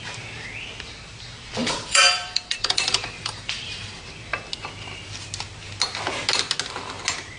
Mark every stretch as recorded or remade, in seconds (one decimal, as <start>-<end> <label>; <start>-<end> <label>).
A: 0.0-1.6 recorded; 1.6-4.0 remade; 4.0-7.4 recorded